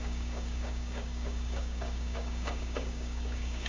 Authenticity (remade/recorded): remade